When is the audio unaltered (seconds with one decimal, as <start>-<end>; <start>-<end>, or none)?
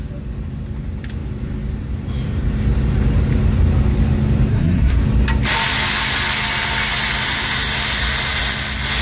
0.0-4.5; 5.0-9.0